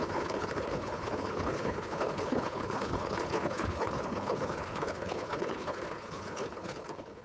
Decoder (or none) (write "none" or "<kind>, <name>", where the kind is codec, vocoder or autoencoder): codec, HILCodec